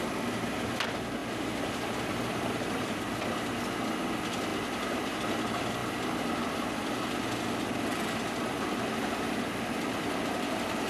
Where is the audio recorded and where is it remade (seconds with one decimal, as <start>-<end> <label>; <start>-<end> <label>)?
0.0-1.2 recorded; 1.2-3.2 remade; 3.2-4.5 recorded; 4.5-5.2 remade; 5.2-5.8 recorded; 5.8-6.4 remade; 6.4-7.9 recorded; 7.9-10.2 remade; 10.2-10.9 recorded